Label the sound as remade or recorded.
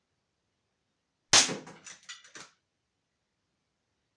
recorded